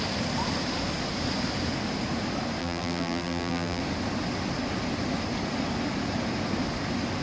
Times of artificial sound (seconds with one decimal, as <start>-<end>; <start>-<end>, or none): 2.6-3.8